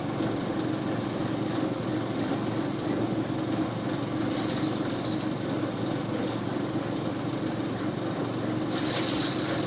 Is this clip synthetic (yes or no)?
no